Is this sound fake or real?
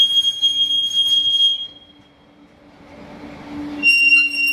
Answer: real